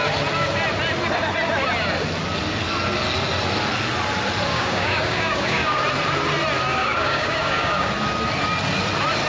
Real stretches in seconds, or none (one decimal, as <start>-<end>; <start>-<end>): 0.0-4.5; 5.8-6.8; 7.9-9.3